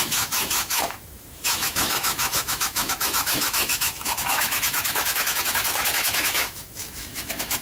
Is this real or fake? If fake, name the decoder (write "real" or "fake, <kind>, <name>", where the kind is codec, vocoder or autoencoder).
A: fake, autoencoder, DAC-VAE